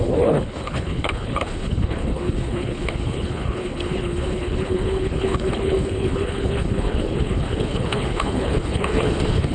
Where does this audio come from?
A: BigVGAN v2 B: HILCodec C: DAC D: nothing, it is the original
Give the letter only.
B